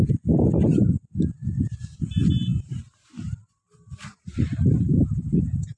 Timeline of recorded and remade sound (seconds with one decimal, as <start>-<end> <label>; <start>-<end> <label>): 0.0-2.5 recorded; 2.5-5.8 remade

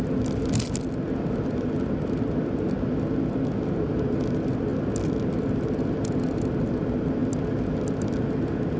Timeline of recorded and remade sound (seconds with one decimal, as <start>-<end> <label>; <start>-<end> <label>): 0.0-8.8 recorded

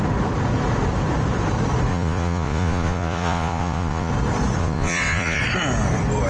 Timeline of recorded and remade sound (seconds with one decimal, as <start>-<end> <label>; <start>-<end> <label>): 0.0-1.9 recorded; 1.9-4.1 remade; 4.1-4.6 recorded; 4.6-5.4 remade; 5.4-6.3 recorded